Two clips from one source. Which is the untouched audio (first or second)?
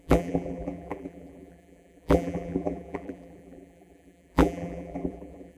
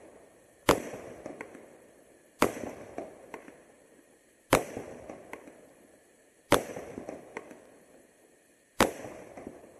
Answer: second